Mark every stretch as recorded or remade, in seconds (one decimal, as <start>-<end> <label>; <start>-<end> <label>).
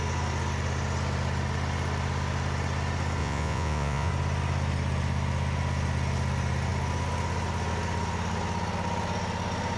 0.0-3.2 recorded; 3.2-4.1 remade; 4.1-9.8 recorded